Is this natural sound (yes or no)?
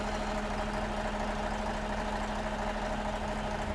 yes